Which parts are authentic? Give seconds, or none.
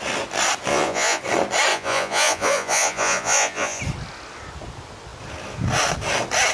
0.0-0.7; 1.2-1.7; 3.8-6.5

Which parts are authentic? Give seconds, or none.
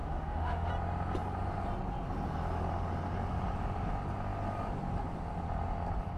0.7-6.2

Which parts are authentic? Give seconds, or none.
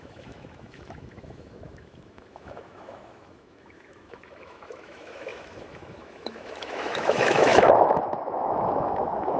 none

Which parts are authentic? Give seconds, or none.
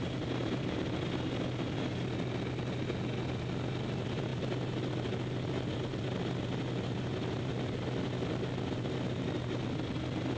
0.0-10.4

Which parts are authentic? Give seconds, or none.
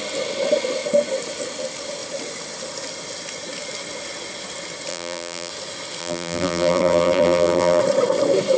0.0-4.9; 5.5-6.0; 7.8-8.6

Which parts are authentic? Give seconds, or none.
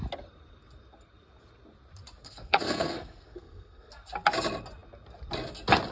0.0-2.2; 3.9-5.9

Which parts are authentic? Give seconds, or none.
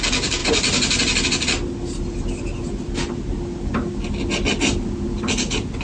0.0-5.8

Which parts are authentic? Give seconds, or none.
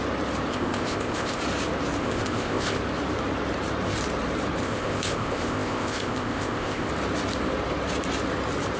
0.0-0.5; 1.4-2.0; 2.8-4.6; 6.9-8.8